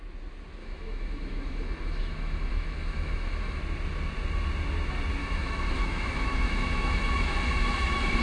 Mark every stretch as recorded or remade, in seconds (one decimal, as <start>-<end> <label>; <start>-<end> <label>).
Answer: 0.0-0.6 recorded; 0.6-3.6 remade; 3.6-5.2 recorded; 5.2-8.2 remade